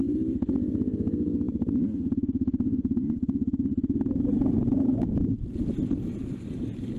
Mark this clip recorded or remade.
recorded